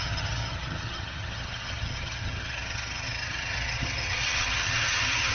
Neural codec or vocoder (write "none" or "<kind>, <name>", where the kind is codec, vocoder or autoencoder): vocoder, HiFi-GAN